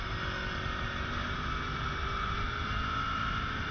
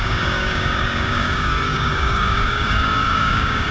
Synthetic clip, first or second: second